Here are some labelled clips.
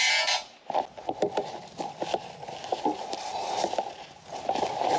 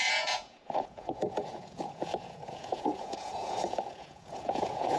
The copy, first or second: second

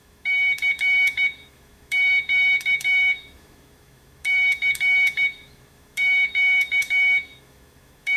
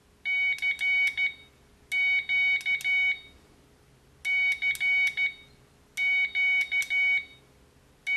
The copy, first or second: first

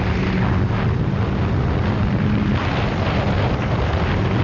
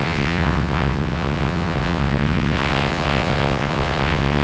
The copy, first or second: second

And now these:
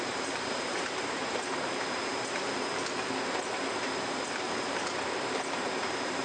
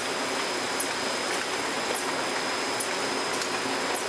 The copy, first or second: first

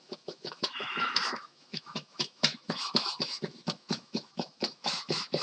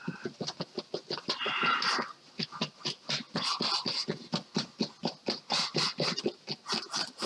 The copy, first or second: first